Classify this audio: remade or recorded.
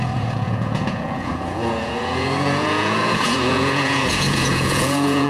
remade